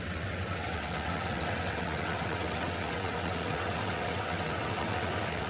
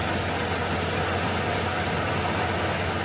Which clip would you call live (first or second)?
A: second